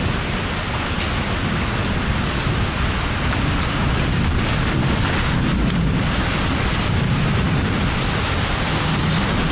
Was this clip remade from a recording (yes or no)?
no